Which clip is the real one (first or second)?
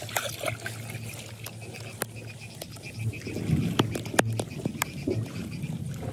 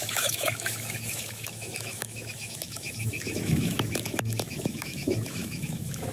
first